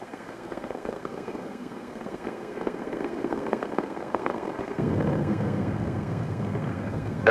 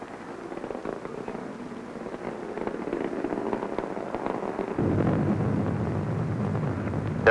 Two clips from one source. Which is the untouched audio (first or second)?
second